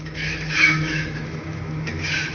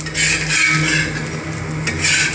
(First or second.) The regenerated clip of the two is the first